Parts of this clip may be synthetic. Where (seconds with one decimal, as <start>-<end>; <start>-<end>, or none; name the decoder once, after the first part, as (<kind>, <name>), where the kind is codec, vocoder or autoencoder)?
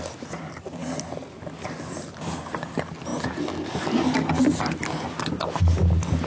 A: none